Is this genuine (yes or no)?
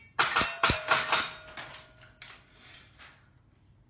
yes